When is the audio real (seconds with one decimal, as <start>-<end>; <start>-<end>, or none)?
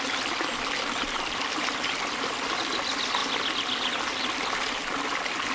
0.0-5.5